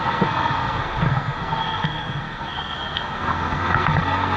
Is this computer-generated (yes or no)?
yes